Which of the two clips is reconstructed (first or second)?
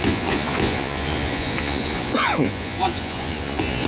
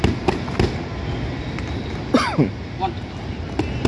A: first